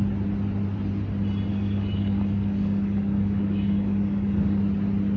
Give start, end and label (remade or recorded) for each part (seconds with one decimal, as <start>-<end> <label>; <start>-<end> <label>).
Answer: 0.0-1.5 recorded; 1.5-4.6 remade; 4.6-5.2 recorded

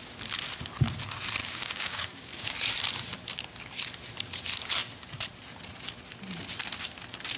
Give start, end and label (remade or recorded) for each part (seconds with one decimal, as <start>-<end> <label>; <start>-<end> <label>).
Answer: 0.0-1.4 recorded; 1.4-2.5 remade; 2.5-7.4 recorded

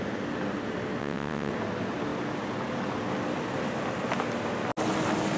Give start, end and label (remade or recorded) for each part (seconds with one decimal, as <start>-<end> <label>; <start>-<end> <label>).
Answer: 0.0-1.0 recorded; 1.0-1.5 remade; 1.5-5.4 recorded

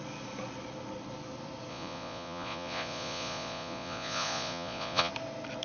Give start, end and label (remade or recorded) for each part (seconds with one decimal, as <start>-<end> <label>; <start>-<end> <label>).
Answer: 0.0-1.7 recorded; 1.7-5.1 remade; 5.1-5.6 recorded

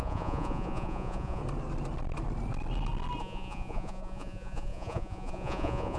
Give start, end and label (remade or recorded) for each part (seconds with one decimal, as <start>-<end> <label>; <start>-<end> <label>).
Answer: 0.0-1.4 remade; 1.4-3.2 recorded; 3.2-6.0 remade

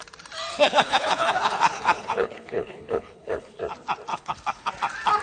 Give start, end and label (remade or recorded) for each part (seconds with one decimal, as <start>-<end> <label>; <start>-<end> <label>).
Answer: 0.0-0.5 recorded; 0.5-3.6 remade; 3.6-4.1 recorded; 4.1-4.7 remade; 4.7-5.2 recorded

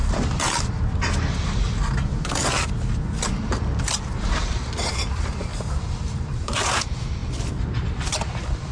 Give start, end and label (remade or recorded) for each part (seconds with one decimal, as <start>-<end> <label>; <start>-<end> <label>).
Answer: 0.0-2.4 remade; 2.4-3.9 recorded; 3.9-7.2 remade; 7.2-8.7 recorded

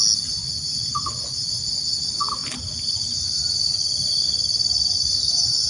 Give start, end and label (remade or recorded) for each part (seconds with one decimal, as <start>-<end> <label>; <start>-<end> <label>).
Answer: 0.0-5.7 recorded